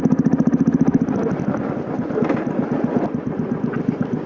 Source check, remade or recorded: recorded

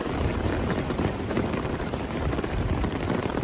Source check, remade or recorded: remade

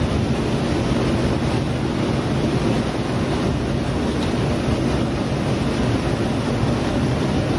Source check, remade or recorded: recorded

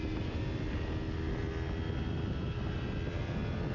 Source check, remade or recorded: recorded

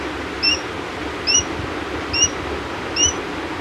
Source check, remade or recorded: recorded